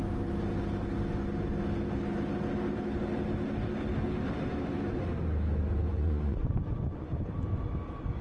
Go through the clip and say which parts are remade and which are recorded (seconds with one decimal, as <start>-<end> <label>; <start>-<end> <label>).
0.0-5.9 recorded; 5.9-7.2 remade; 7.2-8.2 recorded